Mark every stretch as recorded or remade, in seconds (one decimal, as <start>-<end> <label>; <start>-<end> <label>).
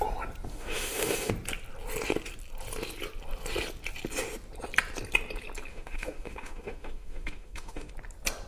0.0-0.5 recorded; 0.5-1.3 remade; 1.3-5.7 recorded; 5.7-7.9 remade; 7.9-8.5 recorded